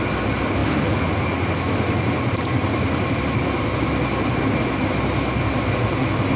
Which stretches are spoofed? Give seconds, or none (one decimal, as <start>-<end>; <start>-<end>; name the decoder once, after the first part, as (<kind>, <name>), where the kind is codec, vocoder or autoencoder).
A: none